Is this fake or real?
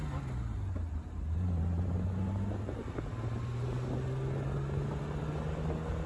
real